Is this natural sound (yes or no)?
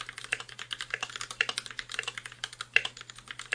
yes